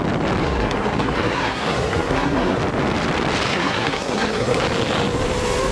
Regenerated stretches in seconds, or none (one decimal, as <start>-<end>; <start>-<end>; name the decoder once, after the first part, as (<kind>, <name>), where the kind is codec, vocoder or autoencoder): 0.4-2.6 (codec, SNAC); 3.5-4.6